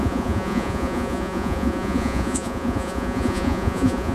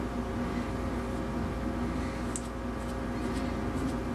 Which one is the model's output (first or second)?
first